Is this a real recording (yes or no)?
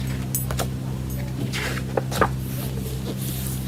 yes